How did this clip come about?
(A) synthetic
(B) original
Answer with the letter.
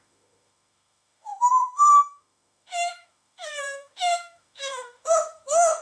A